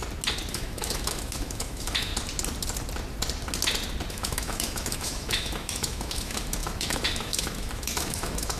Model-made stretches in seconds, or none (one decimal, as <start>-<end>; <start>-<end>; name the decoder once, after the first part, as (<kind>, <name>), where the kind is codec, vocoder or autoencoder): 0.5-2.1 (autoencoder, DAC-VAE); 4.1-8.6